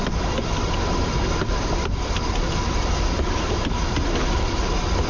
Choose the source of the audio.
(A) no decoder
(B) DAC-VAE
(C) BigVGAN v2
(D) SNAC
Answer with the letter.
A